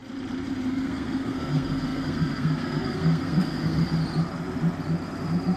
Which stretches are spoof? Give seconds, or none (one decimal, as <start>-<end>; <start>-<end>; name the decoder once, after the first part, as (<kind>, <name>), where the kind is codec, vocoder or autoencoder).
0.7-3.8 (codec, SNAC)